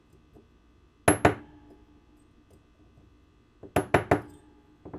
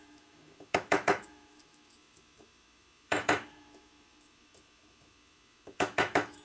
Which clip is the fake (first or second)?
second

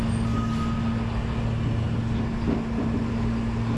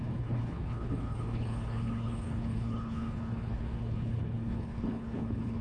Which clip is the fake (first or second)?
second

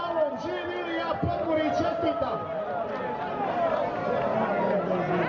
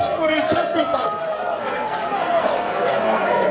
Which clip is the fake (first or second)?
second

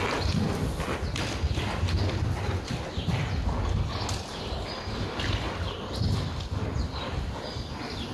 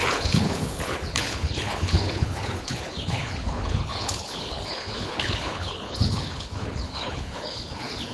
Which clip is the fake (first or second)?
second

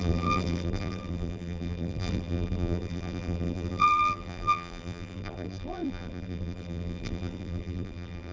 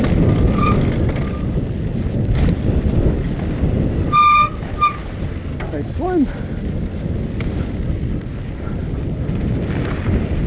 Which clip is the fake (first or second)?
first